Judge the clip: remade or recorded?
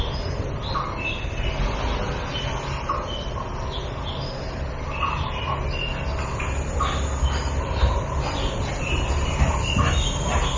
recorded